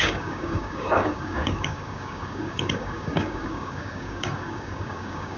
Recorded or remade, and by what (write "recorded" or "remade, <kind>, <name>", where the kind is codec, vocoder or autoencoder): remade, codec, DAC